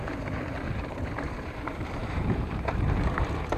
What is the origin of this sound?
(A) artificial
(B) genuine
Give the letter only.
A